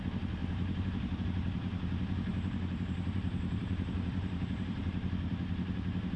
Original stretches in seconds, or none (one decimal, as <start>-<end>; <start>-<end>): 0.0-0.4; 1.2-2.3; 4.9-6.2